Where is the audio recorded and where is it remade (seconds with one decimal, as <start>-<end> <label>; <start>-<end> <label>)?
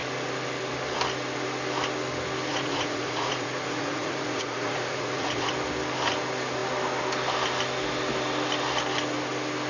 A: 0.0-2.5 recorded; 2.5-5.5 remade; 5.5-9.7 recorded